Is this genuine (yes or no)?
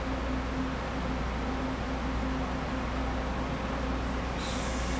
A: yes